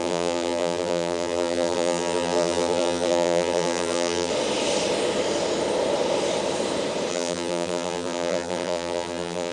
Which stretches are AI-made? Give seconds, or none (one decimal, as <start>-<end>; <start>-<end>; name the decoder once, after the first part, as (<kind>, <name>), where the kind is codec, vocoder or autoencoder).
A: 0.0-4.3 (vocoder, BigVGAN v2); 7.1-9.5